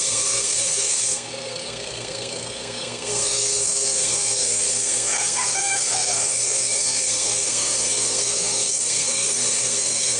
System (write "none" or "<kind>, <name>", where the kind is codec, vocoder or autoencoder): codec, SNAC